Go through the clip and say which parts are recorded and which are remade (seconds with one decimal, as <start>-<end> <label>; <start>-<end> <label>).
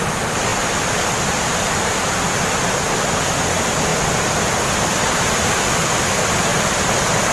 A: 0.0-6.5 recorded; 6.5-7.3 remade